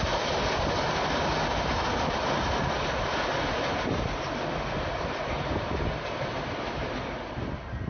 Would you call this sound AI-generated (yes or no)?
no